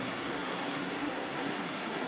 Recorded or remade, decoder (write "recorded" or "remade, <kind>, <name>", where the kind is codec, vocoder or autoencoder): remade, codec, SNAC